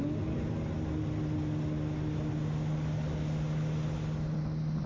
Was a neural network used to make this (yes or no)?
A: no